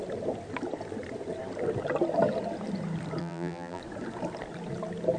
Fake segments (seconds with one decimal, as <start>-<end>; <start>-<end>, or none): 3.2-3.8